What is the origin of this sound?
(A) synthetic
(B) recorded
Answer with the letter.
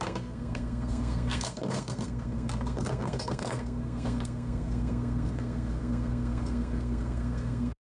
A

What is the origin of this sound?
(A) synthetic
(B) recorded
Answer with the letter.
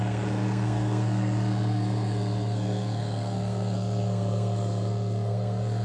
A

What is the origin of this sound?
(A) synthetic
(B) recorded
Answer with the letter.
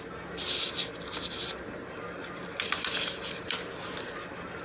B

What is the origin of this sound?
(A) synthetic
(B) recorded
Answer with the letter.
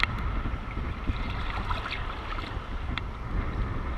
B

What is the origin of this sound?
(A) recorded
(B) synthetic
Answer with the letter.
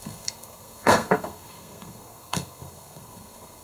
B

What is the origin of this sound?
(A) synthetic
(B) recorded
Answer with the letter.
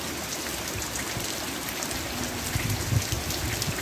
B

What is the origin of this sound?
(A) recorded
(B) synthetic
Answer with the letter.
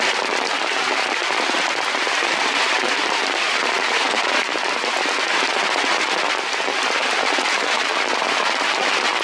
A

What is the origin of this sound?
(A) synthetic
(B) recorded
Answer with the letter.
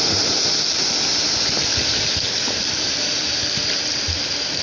B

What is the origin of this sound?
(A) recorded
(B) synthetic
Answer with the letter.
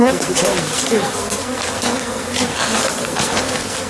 B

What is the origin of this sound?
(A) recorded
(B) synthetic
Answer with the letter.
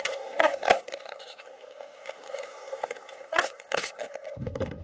B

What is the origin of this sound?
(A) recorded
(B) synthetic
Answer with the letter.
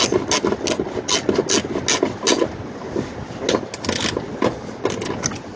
A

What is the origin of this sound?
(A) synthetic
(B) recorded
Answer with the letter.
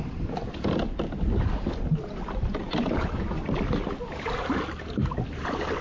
B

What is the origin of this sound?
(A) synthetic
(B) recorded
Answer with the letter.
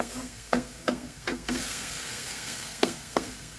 A